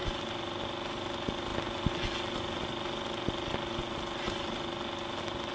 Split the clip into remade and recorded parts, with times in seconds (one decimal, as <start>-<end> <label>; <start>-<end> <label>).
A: 0.0-5.5 recorded